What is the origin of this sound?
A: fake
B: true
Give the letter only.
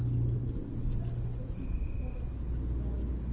B